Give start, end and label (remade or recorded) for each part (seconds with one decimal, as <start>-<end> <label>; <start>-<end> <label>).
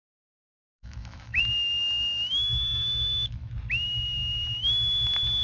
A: 0.0-1.4 remade; 1.4-1.8 recorded; 1.8-3.5 remade; 3.5-5.4 recorded